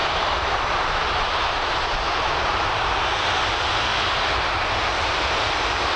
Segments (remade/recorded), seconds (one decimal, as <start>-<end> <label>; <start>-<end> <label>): 0.0-3.6 remade; 3.6-6.0 recorded